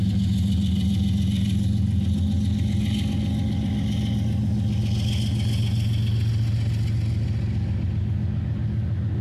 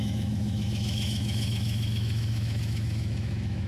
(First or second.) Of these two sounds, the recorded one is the first